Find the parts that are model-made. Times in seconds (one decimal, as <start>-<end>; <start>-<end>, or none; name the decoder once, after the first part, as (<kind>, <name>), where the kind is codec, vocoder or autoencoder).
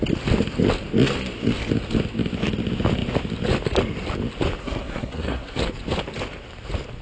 4.6-5.6 (codec, SNAC)